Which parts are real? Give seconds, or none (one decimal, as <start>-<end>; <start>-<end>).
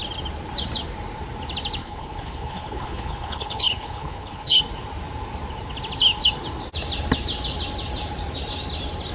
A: 0.0-1.8; 4.6-9.1